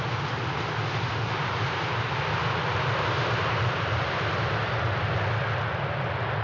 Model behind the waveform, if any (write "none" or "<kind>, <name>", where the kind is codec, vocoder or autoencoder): none